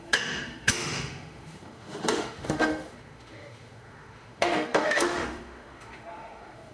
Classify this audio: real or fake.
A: fake